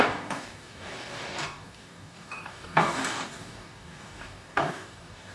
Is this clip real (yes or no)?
no